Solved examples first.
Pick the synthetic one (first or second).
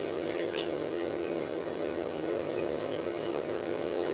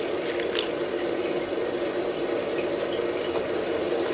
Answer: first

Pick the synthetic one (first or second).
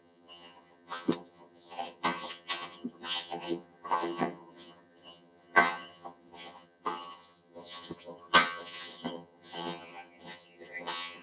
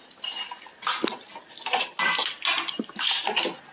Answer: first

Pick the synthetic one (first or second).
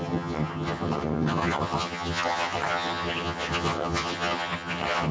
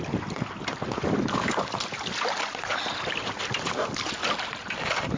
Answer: first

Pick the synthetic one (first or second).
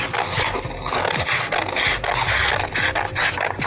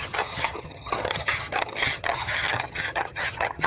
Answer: second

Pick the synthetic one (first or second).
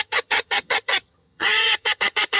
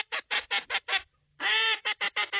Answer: first